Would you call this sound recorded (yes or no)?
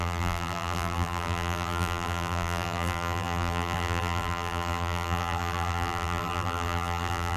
no